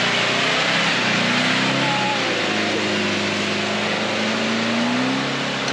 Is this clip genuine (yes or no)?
yes